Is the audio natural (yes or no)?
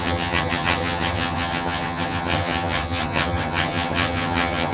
no